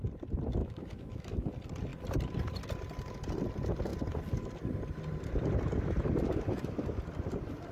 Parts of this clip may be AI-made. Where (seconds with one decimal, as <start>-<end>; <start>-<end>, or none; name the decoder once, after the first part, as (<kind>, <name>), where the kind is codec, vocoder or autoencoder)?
0.6-1.5 (autoencoder, DAC-VAE)